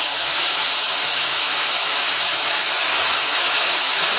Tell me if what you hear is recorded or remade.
remade